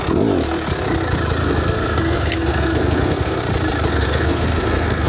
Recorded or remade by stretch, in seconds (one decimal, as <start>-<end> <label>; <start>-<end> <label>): 0.0-1.4 recorded; 1.4-3.4 remade; 3.4-3.9 recorded; 3.9-5.1 remade